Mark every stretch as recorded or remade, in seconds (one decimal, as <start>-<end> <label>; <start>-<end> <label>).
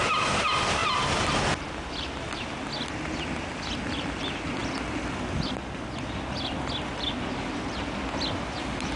0.0-9.0 recorded